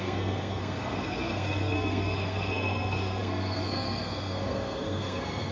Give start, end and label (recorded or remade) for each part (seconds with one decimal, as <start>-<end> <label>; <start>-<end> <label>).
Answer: 0.0-5.5 remade